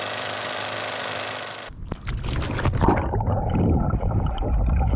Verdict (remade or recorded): recorded